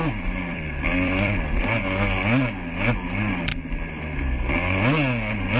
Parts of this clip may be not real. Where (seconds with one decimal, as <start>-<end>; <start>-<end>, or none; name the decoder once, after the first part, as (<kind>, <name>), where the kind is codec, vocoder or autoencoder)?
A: 0.5-1.6 (vocoder, BigVGAN v2); 3.5-4.0